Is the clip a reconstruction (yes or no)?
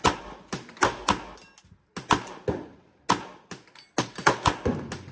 no